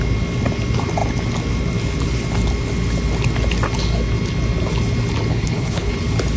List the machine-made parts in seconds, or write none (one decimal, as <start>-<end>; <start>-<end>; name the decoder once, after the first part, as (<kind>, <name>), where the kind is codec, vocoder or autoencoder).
5.3-5.9 (codec, HILCodec)